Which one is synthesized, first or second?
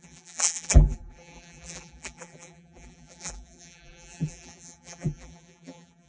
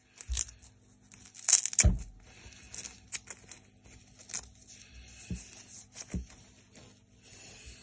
first